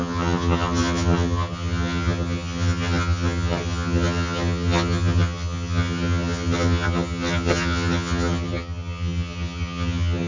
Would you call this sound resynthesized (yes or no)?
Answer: yes